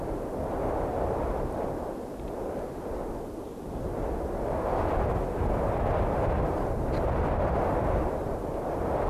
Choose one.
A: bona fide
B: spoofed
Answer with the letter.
A